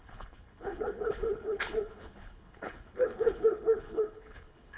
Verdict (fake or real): fake